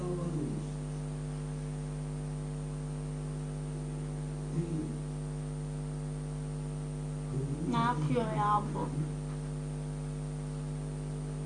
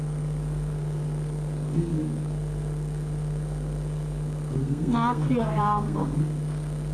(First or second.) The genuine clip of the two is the first